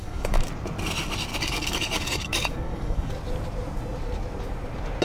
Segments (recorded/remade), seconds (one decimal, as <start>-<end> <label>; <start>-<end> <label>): 0.0-0.5 remade; 0.5-1.3 recorded; 1.3-3.1 remade; 3.1-5.0 recorded